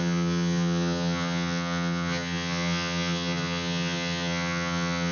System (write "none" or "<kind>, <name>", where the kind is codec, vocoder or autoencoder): vocoder, HiFi-GAN